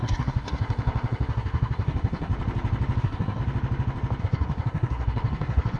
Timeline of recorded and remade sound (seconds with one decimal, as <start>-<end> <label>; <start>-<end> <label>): 0.0-2.3 remade; 2.3-3.0 recorded; 3.0-3.4 remade; 3.4-4.2 recorded; 4.2-5.8 remade